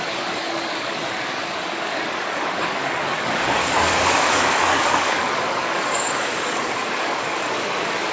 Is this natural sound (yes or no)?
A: no